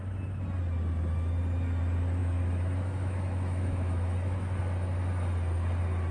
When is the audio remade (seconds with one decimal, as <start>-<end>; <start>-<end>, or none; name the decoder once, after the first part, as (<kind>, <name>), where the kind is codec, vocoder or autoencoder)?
2.2-4.6 (autoencoder, DAC-VAE)